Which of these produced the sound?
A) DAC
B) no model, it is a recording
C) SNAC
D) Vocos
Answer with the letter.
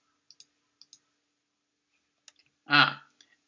B